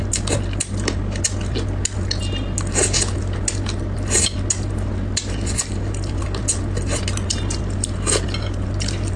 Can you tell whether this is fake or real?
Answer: real